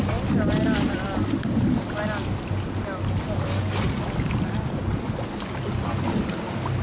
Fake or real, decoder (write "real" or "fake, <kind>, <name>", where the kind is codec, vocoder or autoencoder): real